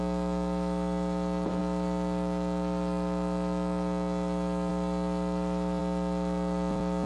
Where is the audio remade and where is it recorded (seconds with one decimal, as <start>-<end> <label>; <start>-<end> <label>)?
0.0-7.1 remade